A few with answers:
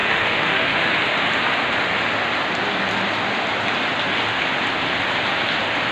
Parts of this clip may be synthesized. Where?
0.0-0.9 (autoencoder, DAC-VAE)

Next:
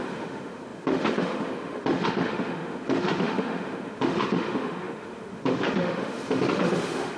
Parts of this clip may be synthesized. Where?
0.0-7.2 (autoencoder, DAC-VAE)

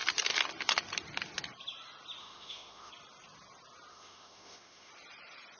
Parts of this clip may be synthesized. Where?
2.2-2.9 (autoencoder, DAC-VAE); 3.9-4.9

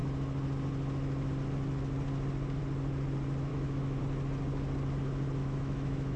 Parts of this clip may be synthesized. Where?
3.5-4.0 (autoencoder, DAC-VAE); 5.4-6.2

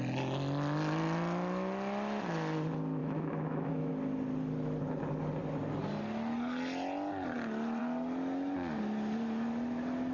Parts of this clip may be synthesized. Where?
3.0-3.9 (autoencoder, DAC-VAE)

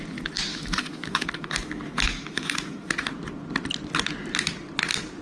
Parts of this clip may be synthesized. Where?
0.5-2.9 (autoencoder, DAC-VAE)